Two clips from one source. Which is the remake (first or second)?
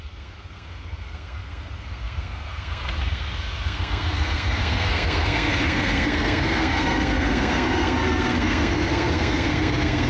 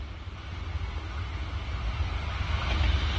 first